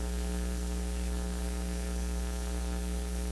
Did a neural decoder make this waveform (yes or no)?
yes